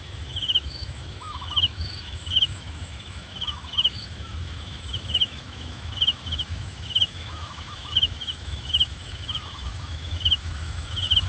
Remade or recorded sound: remade